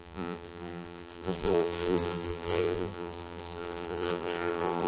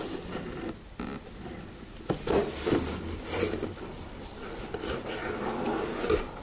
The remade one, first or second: first